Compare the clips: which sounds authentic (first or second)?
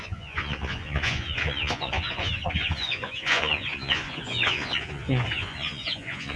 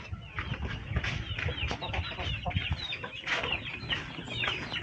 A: second